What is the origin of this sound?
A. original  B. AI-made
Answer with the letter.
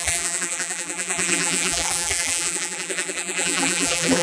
B